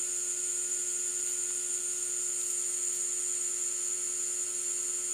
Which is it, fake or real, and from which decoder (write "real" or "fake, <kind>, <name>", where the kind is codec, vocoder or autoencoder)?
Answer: real